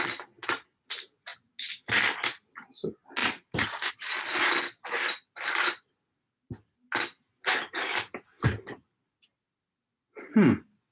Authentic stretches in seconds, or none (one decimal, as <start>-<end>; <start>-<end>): 0.0-10.9